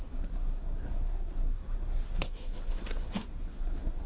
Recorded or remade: remade